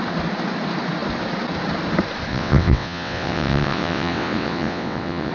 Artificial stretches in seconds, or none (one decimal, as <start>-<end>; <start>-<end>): 2.3-5.3